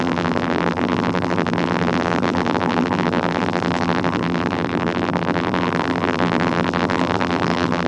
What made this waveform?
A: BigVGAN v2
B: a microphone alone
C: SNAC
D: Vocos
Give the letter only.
A